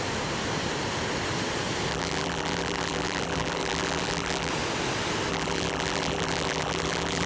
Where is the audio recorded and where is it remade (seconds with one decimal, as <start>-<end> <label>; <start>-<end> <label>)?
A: 0.0-1.9 recorded; 1.9-4.5 remade; 4.5-5.3 recorded; 5.3-7.3 remade